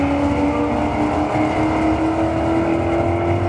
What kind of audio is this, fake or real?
real